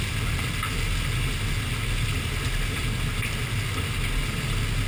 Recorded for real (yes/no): yes